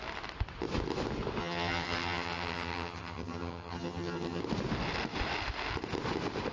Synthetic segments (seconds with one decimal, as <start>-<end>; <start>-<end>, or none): 1.4-4.4